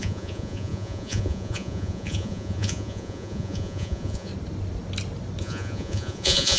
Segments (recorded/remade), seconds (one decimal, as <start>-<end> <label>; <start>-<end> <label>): 0.0-4.3 remade; 4.3-5.4 recorded; 5.4-6.6 remade